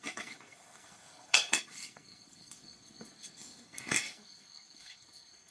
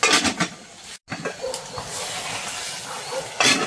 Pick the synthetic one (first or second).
first